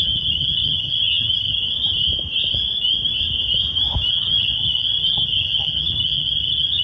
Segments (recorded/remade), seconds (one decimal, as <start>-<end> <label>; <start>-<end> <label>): 0.0-1.6 remade; 1.6-4.1 recorded; 4.1-6.8 remade